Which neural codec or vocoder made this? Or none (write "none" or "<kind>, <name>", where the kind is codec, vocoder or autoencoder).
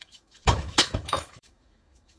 autoencoder, DAC-VAE